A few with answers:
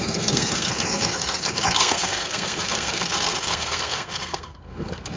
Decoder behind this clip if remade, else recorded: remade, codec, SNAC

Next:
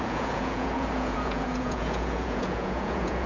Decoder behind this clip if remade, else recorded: remade, vocoder, Vocos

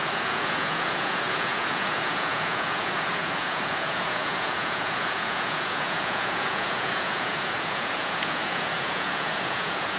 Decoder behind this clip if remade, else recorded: remade, vocoder, Vocos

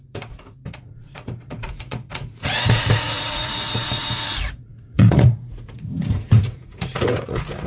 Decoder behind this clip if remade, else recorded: remade, vocoder, Vocos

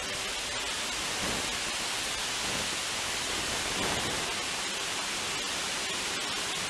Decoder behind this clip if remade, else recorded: recorded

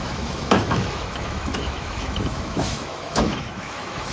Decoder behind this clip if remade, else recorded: remade, autoencoder, DAC-VAE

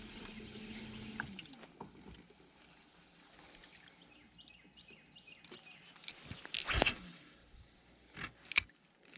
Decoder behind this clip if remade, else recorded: recorded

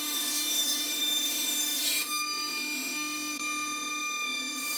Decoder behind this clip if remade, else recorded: remade, autoencoder, DAC-VAE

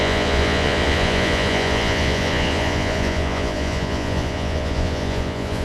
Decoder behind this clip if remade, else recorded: remade, vocoder, Vocos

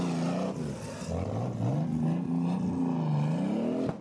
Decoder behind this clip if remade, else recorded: recorded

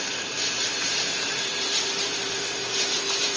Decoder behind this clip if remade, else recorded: remade, vocoder, BigVGAN v2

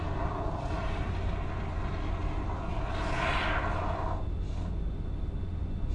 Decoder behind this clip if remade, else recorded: recorded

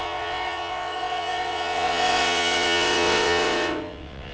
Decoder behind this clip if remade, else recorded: remade, vocoder, WaveNeXt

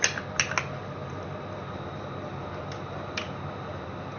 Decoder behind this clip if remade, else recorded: recorded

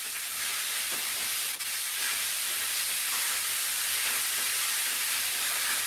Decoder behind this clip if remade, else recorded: recorded